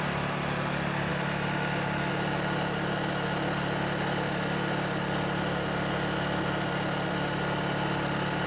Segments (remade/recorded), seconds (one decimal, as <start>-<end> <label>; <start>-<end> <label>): 0.0-8.5 recorded